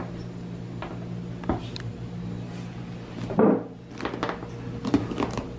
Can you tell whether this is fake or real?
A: real